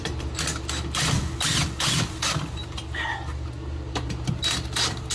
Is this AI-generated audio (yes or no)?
no